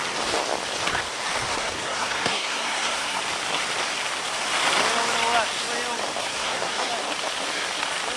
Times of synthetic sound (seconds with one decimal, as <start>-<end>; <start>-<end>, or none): 1.5-3.2; 6.2-6.9